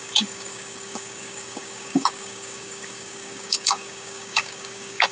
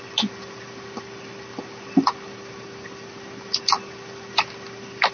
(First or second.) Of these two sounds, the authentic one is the second